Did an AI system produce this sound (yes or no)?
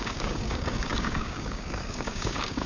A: yes